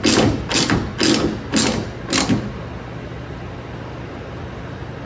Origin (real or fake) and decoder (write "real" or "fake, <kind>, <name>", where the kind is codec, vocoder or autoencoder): real